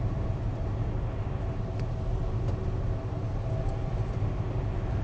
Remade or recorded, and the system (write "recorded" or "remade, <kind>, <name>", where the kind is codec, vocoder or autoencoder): recorded